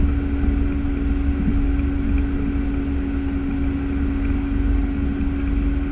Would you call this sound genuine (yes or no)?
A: yes